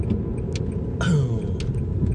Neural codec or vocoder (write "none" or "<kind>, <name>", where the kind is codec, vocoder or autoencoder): none